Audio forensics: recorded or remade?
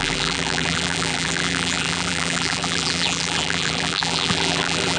remade